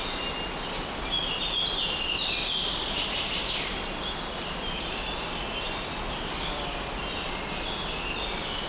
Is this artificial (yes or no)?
no